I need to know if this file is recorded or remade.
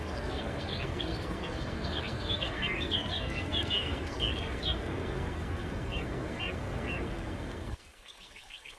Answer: remade